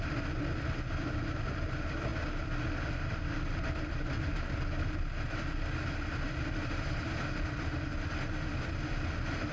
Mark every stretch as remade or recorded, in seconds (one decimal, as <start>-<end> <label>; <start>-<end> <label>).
0.0-9.5 recorded